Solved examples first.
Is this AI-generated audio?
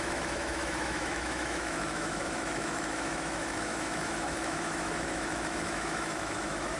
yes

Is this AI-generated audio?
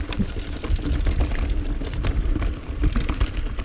no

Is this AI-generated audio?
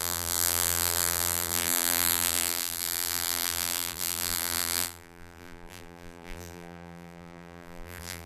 yes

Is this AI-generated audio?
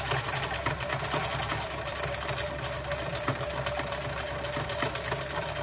no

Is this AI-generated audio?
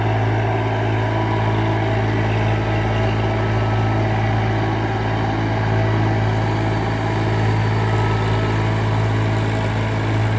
no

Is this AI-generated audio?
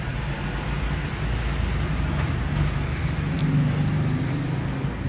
no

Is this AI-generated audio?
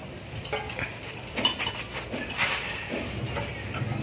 no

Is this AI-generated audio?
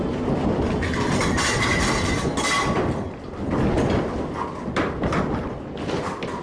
no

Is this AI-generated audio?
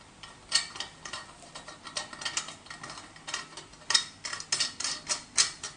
no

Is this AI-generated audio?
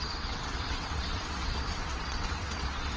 yes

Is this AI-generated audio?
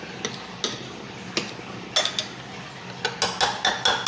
no